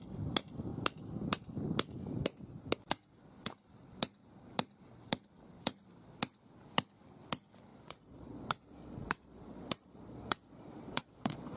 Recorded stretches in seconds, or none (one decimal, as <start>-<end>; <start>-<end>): 0.0-7.7